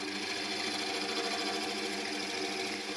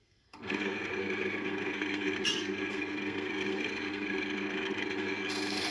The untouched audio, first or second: first